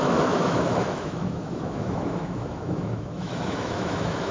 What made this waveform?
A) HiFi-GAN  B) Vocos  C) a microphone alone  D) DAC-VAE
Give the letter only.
D